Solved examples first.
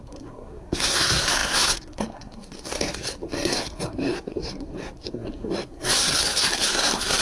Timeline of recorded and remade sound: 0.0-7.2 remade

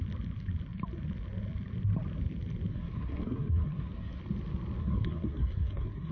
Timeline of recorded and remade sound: 0.0-2.7 recorded; 2.7-4.2 remade; 4.2-4.8 recorded; 4.8-6.1 remade